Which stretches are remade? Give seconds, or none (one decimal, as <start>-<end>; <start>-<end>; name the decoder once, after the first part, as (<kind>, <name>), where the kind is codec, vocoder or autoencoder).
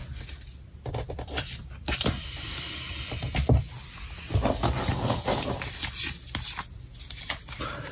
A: 0.9-3.2 (vocoder, BigVGAN v2); 7.4-7.9